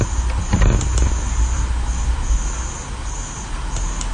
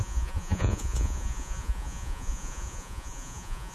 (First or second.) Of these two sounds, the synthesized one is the second